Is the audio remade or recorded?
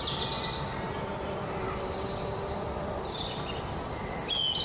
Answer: recorded